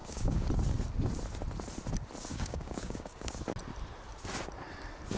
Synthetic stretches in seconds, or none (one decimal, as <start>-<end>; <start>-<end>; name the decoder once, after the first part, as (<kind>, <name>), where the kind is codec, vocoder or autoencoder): 0.0-0.5 (codec, DAC); 2.3-3.4